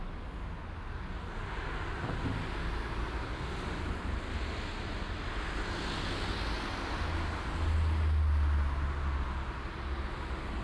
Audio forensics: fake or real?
real